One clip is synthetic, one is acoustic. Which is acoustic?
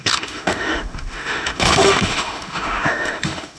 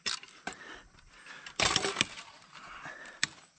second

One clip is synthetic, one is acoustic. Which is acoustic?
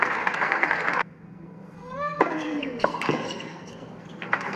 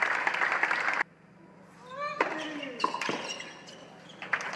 second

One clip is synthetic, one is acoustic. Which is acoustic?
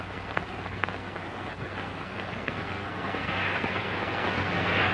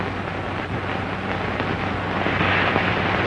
second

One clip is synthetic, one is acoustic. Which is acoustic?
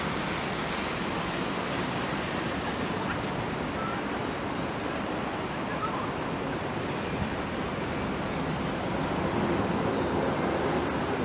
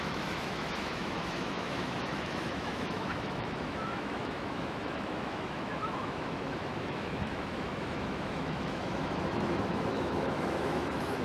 first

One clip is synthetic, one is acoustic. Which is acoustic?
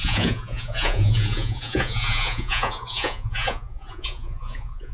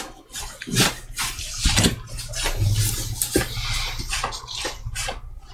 second